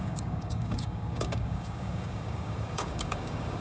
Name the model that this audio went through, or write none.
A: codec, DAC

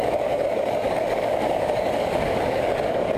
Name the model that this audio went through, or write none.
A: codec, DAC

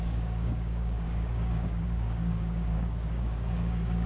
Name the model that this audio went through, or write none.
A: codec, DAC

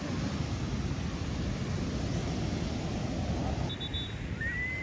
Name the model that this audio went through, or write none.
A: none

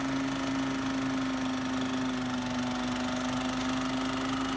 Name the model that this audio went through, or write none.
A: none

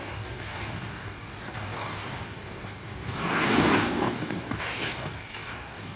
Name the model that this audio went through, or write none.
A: codec, DAC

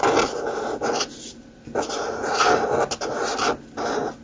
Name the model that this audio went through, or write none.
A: none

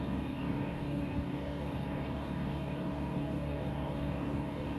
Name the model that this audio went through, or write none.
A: codec, DAC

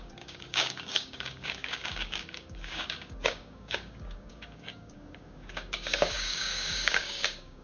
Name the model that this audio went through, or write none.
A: codec, DAC